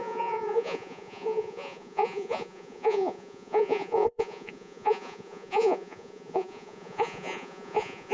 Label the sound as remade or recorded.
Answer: remade